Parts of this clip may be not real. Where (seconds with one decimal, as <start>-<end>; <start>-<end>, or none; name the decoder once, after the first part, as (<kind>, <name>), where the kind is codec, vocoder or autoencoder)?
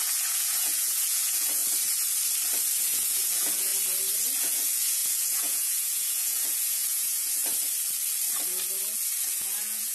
0.0-1.6 (vocoder, Vocos); 2.8-3.7; 4.4-7.4; 9.3-9.9